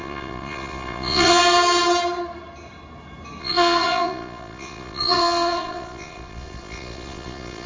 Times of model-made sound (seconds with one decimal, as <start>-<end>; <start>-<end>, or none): 0.0-1.4; 3.4-7.7